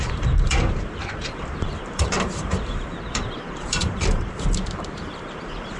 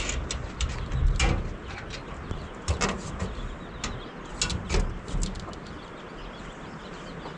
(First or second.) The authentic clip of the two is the second